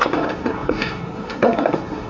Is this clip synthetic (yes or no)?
yes